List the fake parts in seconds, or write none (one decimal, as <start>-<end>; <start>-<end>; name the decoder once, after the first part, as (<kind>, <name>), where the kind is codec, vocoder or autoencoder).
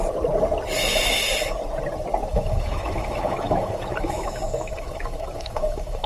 2.3-6.1 (autoencoder, DAC-VAE)